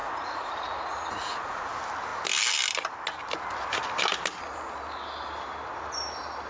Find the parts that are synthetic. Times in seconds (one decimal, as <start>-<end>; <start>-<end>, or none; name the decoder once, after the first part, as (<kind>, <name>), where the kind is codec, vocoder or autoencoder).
0.0-1.7 (vocoder, Vocos)